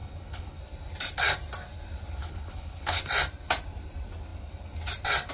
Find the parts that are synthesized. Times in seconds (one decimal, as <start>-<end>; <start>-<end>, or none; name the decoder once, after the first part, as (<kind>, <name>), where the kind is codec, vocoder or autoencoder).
0.0-0.6 (codec, HILCodec); 2.2-3.0